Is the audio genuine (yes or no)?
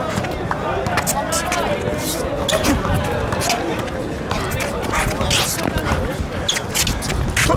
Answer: yes